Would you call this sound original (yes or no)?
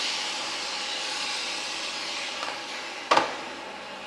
yes